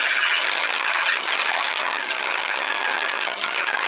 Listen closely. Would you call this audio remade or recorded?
remade